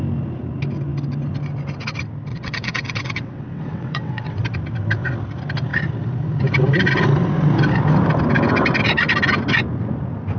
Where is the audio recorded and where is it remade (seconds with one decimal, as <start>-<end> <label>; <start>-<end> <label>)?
0.0-2.3 recorded; 2.3-4.4 remade; 4.4-10.4 recorded